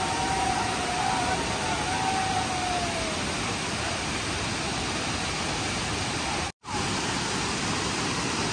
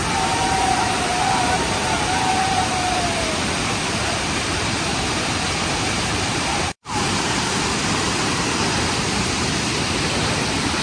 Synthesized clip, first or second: second